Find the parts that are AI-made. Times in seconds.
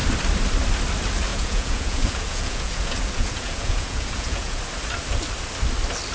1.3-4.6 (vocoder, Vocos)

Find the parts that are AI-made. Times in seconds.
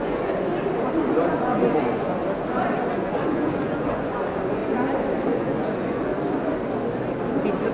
0.0-0.5 (vocoder, Vocos); 1.3-2.2; 2.9-4.6; 5.2-6.1